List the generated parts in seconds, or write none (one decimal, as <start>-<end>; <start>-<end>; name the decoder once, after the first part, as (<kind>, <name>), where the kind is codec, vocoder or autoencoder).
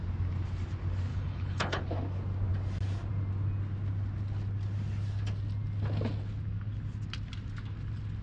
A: 1.1-1.8 (codec, HILCodec)